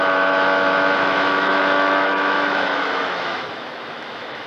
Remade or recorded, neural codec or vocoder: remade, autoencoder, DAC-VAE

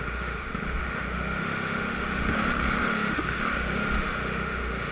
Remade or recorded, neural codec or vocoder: remade, autoencoder, DAC-VAE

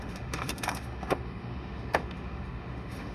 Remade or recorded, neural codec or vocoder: remade, autoencoder, DAC-VAE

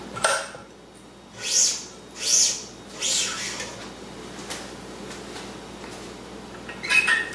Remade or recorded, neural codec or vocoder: recorded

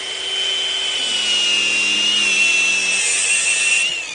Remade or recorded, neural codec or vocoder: recorded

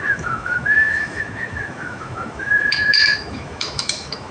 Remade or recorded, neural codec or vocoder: remade, autoencoder, DAC-VAE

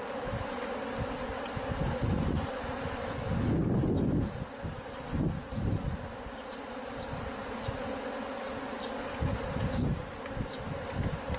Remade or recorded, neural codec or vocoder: recorded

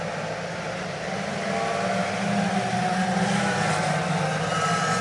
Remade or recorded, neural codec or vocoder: recorded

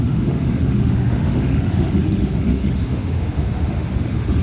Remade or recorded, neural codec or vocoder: remade, autoencoder, DAC-VAE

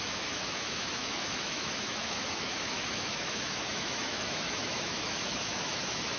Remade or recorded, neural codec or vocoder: remade, autoencoder, DAC-VAE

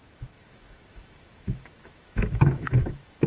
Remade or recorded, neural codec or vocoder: remade, autoencoder, DAC-VAE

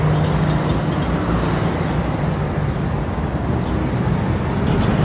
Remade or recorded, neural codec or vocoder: recorded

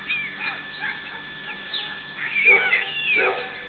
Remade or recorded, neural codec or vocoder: remade, autoencoder, DAC-VAE